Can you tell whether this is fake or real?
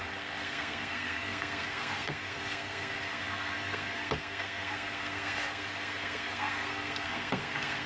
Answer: fake